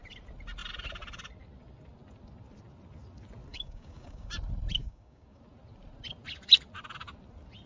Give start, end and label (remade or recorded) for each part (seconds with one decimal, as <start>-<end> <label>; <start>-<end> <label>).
0.0-3.5 recorded; 3.5-4.3 remade; 4.3-4.8 recorded; 4.8-5.4 remade; 5.4-7.7 recorded

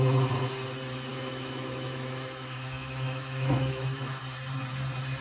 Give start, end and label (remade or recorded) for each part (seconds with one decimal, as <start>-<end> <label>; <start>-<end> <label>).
0.0-1.1 recorded; 1.1-4.2 remade; 4.2-5.2 recorded

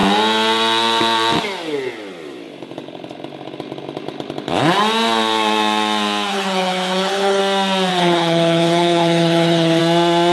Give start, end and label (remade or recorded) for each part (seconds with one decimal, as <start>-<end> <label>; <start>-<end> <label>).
0.0-6.3 recorded; 6.3-7.4 remade; 7.4-7.9 recorded; 7.9-9.8 remade; 9.8-10.3 recorded